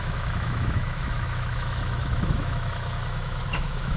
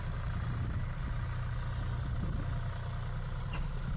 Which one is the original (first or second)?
second